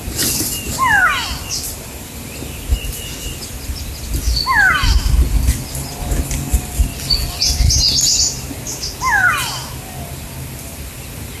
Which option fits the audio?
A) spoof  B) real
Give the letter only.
B